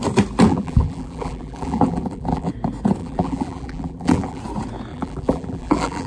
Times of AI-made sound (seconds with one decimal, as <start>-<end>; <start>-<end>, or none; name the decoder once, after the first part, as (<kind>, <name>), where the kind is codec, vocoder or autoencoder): 0.5-2.5 (vocoder, BigVGAN v2); 3.0-4.4; 4.9-6.1